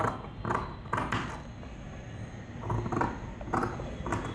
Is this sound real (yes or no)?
yes